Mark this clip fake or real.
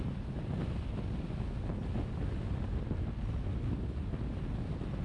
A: real